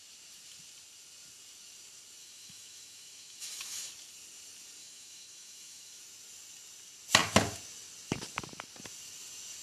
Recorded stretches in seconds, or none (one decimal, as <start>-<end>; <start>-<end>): 0.0-2.2; 3.9-4.8; 6.0-9.6